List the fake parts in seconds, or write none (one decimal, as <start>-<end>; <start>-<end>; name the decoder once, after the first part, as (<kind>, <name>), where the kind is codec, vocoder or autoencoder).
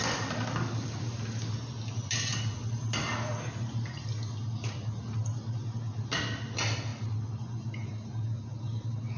none